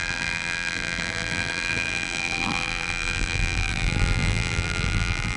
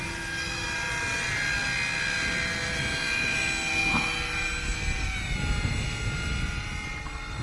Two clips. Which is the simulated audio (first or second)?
first